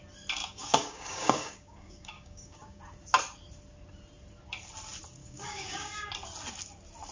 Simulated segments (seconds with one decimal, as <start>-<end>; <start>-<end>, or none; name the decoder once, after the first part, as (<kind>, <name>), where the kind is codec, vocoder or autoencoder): 0.4-2.8 (codec, DAC); 5.2-6.1